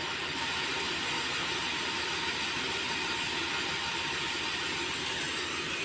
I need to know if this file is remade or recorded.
recorded